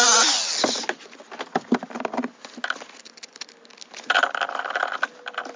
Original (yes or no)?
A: yes